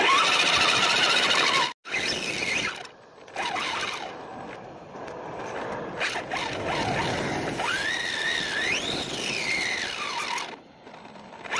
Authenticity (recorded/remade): recorded